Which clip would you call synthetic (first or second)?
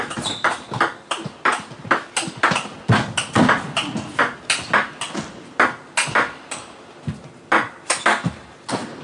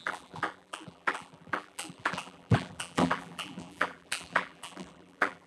second